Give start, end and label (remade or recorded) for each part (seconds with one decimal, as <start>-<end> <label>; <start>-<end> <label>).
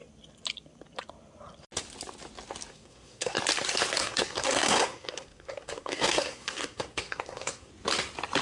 0.0-2.7 recorded; 2.7-3.4 remade; 3.4-4.0 recorded; 4.0-7.7 remade; 7.7-8.4 recorded